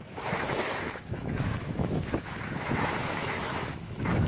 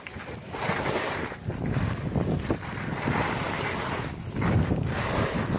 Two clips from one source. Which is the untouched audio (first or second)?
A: second